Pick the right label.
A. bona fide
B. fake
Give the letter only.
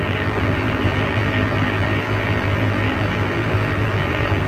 B